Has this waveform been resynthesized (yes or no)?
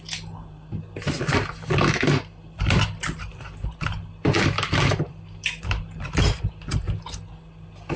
no